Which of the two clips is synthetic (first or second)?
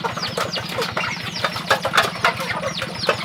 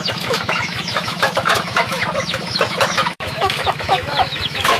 second